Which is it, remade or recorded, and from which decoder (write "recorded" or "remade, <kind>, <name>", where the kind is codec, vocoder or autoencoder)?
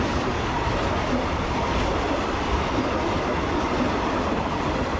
recorded